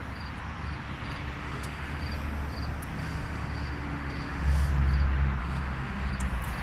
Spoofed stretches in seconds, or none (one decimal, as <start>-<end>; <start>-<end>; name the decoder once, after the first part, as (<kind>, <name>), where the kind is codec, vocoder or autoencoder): 1.4-2.0 (autoencoder, DAC-VAE); 3.0-4.7; 5.4-6.1